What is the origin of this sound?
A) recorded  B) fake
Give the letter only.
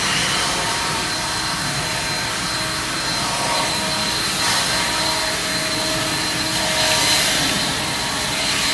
A